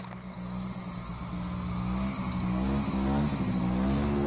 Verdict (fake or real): real